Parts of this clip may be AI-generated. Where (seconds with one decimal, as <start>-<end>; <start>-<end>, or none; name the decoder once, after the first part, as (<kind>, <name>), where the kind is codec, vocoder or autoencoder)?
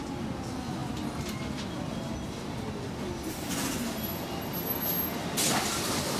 none